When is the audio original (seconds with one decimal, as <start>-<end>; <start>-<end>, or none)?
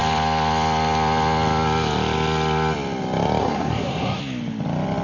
0.0-3.4; 4.2-5.0